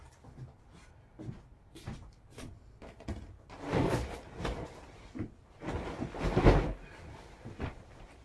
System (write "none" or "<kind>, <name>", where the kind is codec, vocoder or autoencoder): none